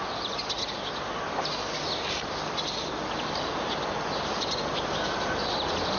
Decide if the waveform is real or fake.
real